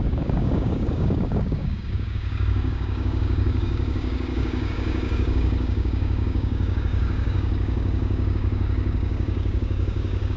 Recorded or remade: remade